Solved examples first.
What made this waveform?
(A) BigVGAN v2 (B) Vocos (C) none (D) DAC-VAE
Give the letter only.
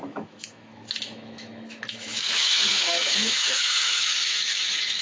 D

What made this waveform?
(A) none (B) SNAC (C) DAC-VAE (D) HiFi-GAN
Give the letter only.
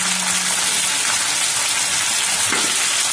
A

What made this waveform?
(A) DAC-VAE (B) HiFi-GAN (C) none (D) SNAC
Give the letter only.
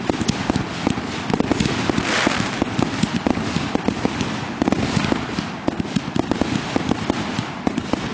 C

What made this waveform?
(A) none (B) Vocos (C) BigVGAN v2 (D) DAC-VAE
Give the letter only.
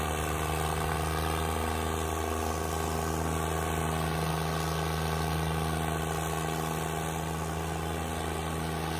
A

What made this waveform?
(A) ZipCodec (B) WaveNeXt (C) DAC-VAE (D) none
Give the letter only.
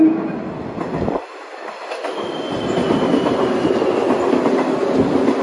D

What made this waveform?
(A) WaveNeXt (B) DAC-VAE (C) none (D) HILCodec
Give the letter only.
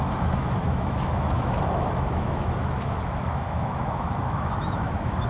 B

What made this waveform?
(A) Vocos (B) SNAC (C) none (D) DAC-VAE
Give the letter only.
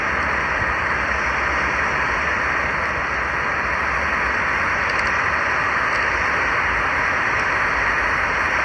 C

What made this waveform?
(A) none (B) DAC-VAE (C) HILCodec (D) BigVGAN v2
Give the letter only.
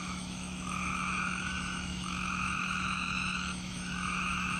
B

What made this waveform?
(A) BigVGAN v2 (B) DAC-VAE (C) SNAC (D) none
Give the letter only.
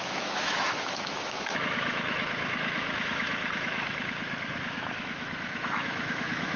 B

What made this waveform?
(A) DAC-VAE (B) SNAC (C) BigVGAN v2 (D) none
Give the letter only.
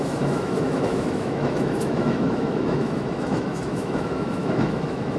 A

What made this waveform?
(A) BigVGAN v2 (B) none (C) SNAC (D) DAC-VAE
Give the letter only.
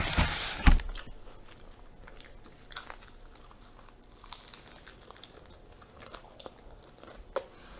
B